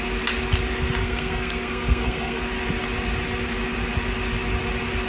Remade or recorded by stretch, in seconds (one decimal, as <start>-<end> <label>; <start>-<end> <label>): 0.0-1.0 recorded; 1.0-2.4 remade; 2.4-5.1 recorded